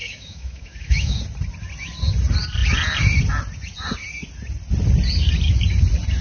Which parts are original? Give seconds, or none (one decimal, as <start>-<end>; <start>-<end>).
1.2-6.2